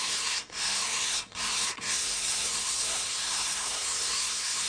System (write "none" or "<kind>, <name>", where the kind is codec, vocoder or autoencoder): codec, SNAC